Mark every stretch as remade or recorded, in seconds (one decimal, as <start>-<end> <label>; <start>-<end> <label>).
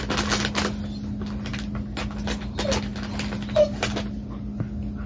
0.0-5.1 recorded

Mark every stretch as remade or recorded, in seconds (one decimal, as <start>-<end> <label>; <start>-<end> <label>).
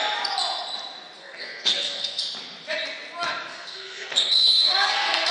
0.0-1.2 recorded; 1.2-2.2 remade; 2.2-3.5 recorded; 3.5-5.3 remade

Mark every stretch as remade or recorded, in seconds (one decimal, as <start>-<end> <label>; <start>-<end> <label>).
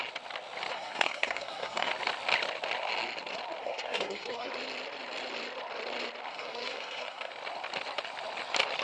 0.0-0.7 recorded; 0.7-1.9 remade; 1.9-3.6 recorded; 3.6-4.5 remade; 4.5-6.3 recorded; 6.3-7.3 remade; 7.3-8.8 recorded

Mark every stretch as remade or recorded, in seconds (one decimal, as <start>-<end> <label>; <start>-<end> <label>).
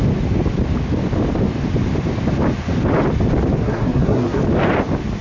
0.0-3.6 recorded; 3.6-4.4 remade; 4.4-5.2 recorded